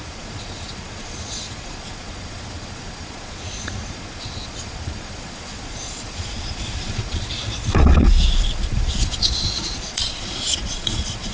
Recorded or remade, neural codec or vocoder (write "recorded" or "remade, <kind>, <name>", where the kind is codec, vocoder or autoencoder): remade, vocoder, Vocos